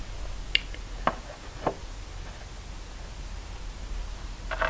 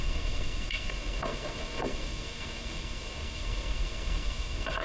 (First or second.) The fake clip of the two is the second